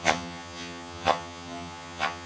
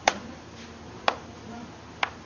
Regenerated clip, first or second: first